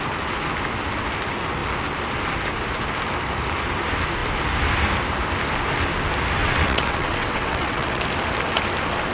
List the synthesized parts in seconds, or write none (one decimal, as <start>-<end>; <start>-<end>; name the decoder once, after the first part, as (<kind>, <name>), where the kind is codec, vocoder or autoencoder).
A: 6.4-8.0 (vocoder, WaveNeXt)